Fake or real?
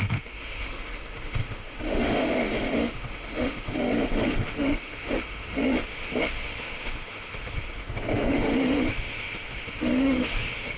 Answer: fake